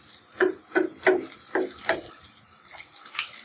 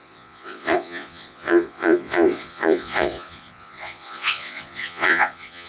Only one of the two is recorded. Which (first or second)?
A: first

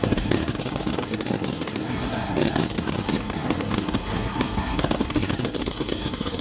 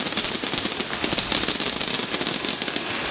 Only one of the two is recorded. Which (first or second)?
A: second